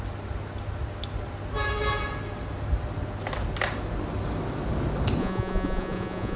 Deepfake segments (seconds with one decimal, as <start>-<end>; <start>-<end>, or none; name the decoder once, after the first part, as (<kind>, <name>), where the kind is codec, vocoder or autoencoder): 5.2-6.4 (vocoder, Vocos)